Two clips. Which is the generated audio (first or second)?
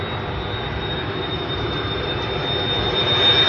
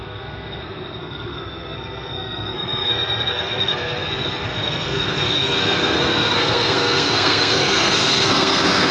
second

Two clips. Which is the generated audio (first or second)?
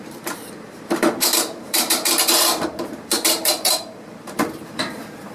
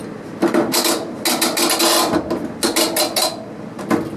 first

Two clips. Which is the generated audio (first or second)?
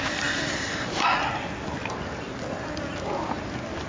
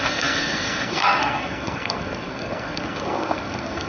second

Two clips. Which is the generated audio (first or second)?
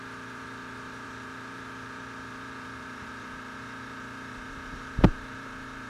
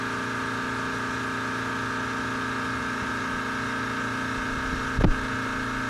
first